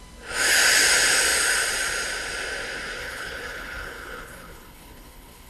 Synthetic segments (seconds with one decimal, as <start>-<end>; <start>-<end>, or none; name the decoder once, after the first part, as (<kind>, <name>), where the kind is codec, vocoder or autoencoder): 3.0-5.5 (codec, HILCodec)

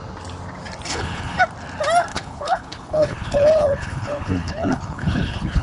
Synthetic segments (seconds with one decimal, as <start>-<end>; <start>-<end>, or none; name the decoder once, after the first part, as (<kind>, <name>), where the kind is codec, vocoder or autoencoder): 0.9-1.4 (codec, HILCodec); 2.1-5.6

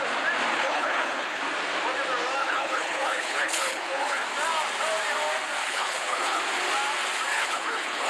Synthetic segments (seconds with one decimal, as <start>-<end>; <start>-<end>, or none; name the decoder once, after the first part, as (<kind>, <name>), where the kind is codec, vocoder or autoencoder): 0.5-1.4 (codec, HILCodec); 2.4-4.2; 5.6-6.4; 7.3-8.1

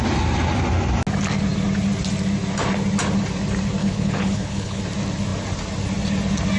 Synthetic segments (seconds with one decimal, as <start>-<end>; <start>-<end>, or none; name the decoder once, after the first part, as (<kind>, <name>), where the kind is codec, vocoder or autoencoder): 3.8-4.8 (codec, HILCodec)

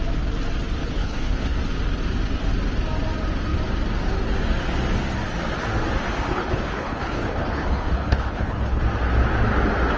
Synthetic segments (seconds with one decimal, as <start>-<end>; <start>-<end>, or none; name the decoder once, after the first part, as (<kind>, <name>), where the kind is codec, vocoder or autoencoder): 0.8-1.6 (codec, HILCodec); 6.3-8.8

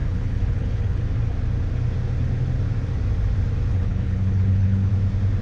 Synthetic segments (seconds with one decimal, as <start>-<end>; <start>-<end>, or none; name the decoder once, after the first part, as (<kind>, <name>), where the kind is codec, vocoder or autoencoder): 0.0-1.0 (codec, HILCodec); 3.7-4.9